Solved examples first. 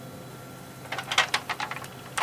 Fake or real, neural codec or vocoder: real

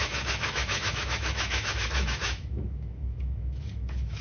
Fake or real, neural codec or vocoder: fake, autoencoder, DAC-VAE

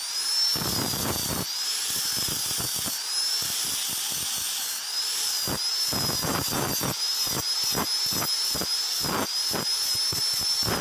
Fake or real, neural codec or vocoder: real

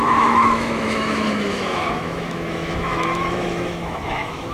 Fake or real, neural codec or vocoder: fake, autoencoder, DAC-VAE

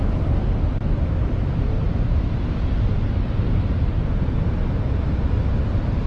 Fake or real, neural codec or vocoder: real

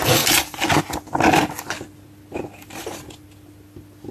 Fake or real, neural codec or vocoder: real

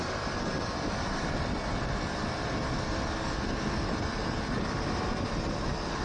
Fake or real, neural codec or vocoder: real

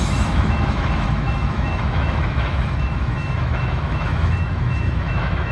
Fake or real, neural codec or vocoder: fake, autoencoder, DAC-VAE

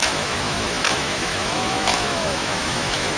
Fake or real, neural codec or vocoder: fake, autoencoder, DAC-VAE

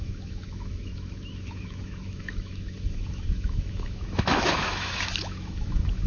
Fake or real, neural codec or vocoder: fake, autoencoder, DAC-VAE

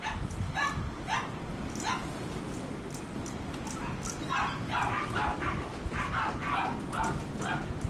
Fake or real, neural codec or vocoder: real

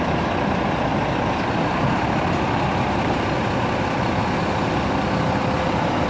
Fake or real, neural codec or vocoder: real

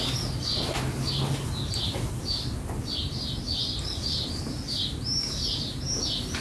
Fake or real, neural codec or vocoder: real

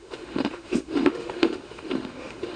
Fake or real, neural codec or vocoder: fake, autoencoder, DAC-VAE